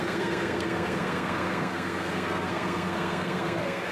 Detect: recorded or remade remade